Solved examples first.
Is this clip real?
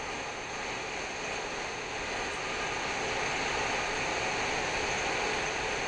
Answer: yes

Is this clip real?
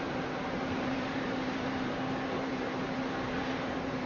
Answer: no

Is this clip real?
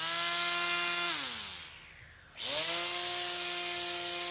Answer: yes